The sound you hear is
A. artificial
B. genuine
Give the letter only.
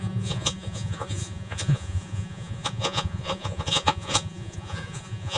A